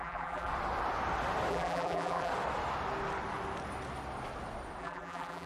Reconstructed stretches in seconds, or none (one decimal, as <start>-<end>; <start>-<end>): 0.0-0.5; 1.5-2.3; 4.8-5.5